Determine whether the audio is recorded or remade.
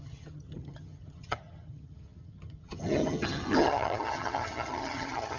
remade